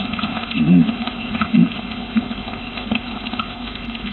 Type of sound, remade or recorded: remade